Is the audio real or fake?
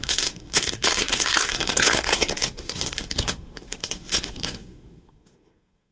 fake